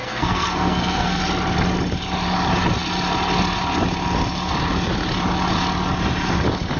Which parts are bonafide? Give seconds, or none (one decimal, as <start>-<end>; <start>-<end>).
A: 1.2-6.8